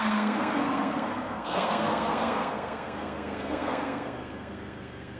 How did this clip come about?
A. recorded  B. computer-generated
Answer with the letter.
B